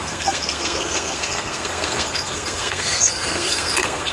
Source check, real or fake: fake